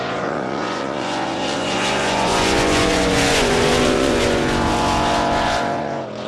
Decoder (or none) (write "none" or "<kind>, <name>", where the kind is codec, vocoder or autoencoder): vocoder, Vocos